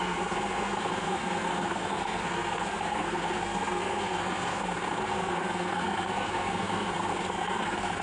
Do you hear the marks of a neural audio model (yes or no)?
yes